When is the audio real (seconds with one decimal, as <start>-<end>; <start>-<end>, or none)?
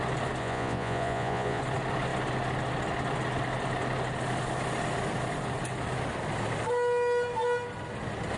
0.0-0.4; 1.6-8.4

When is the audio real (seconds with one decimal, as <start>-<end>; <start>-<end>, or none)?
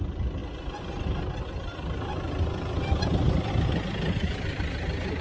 0.0-5.2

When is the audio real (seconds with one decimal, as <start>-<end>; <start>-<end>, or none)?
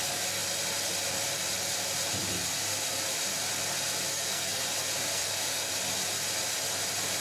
0.0-4.1; 4.6-5.1; 5.7-7.2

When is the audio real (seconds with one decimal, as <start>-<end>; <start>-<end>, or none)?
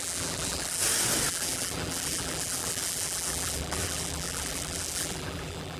0.8-1.3